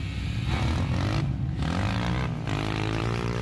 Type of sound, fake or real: real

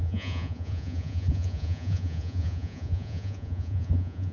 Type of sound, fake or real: fake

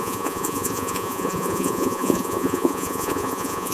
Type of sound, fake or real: fake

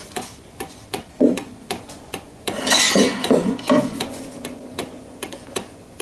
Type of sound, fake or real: fake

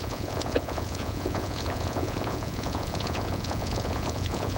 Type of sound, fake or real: fake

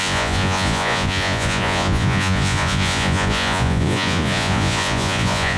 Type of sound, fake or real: fake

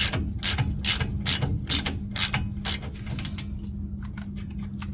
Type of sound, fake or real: real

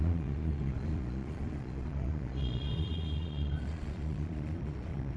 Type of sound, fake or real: fake